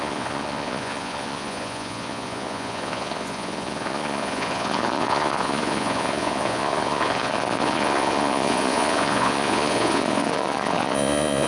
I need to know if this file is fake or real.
fake